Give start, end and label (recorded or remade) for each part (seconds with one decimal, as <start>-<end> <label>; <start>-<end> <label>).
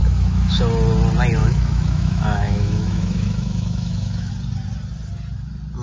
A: 0.0-0.6 remade; 0.6-1.4 recorded; 1.4-4.3 remade; 4.3-5.8 recorded